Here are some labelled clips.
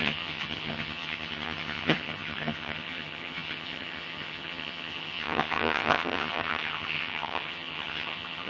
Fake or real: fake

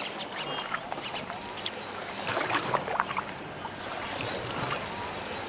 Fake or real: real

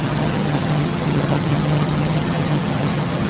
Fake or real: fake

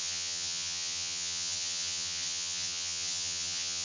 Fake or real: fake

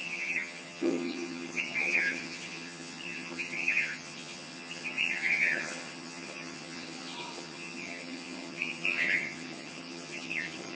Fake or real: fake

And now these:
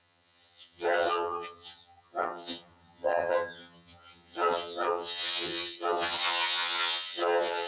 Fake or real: fake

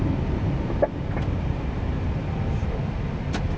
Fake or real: real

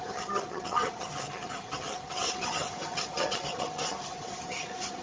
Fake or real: fake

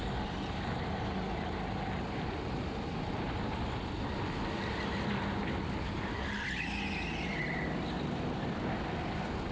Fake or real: real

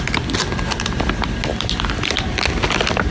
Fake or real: real